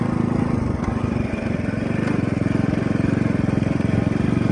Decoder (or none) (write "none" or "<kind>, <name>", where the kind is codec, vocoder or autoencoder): none